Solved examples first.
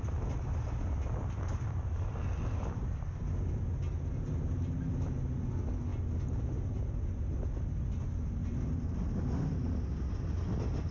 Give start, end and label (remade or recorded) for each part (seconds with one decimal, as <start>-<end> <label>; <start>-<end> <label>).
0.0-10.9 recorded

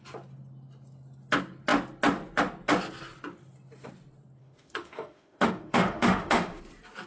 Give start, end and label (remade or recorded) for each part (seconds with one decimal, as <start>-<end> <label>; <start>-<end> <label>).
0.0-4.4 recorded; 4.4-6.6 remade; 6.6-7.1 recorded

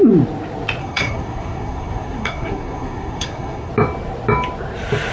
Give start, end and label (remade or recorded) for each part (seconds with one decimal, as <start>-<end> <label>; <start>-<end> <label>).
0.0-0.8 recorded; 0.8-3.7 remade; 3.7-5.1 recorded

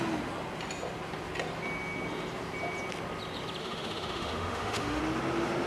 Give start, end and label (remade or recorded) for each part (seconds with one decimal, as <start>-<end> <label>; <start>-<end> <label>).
0.0-3.6 recorded; 3.6-5.0 remade; 5.0-5.7 recorded

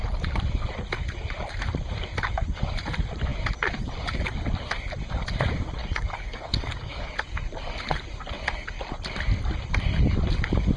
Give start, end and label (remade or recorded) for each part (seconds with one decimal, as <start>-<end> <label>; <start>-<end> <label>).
0.0-5.8 recorded; 5.8-7.1 remade; 7.1-10.8 recorded

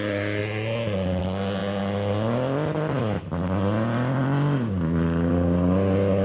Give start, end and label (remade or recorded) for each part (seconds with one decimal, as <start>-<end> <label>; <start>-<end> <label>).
0.0-6.2 recorded

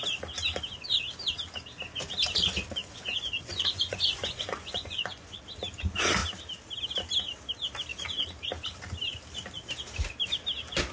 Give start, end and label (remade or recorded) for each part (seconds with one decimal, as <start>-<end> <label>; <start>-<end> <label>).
0.0-2.8 recorded; 2.8-5.4 remade; 5.4-10.9 recorded

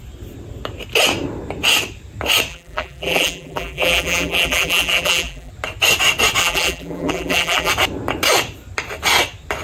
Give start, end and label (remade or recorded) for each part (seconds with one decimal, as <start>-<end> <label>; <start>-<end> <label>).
0.0-2.5 recorded; 2.5-5.5 remade; 5.5-6.4 recorded; 6.4-7.7 remade; 7.7-9.6 recorded